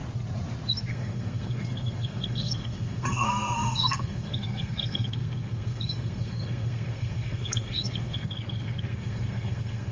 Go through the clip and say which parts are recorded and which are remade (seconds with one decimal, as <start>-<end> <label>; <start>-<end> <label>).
0.0-0.9 recorded; 0.9-9.9 remade